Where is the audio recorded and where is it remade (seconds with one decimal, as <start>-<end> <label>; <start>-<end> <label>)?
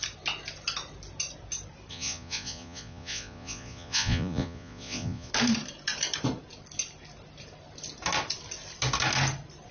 0.0-1.9 recorded; 1.9-5.3 remade; 5.3-9.7 recorded